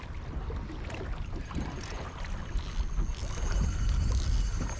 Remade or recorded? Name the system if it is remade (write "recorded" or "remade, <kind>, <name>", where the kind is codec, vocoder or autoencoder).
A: recorded